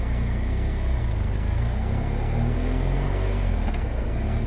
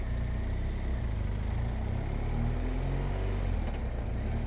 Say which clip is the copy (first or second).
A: first